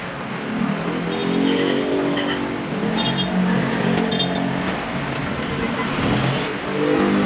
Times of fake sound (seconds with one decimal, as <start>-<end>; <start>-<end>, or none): none